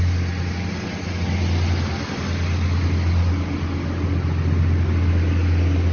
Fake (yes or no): no